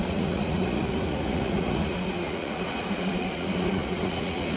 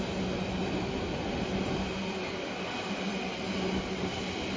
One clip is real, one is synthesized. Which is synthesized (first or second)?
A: first